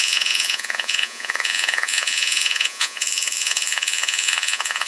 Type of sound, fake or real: fake